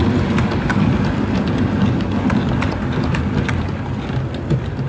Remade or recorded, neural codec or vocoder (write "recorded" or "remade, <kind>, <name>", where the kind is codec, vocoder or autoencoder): recorded